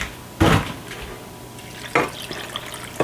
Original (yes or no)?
yes